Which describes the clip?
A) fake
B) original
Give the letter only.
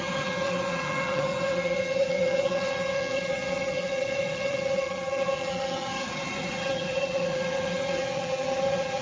A